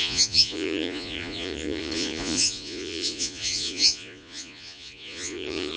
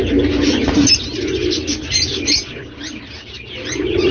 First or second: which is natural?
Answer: second